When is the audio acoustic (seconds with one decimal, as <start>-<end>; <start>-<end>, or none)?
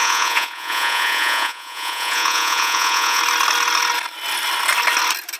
3.2-5.4